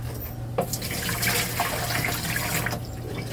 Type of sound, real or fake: real